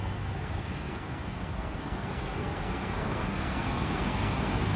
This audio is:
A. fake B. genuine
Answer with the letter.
A